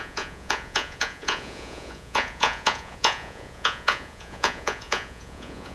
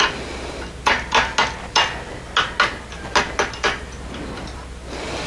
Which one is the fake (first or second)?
first